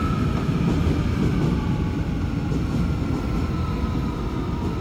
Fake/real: real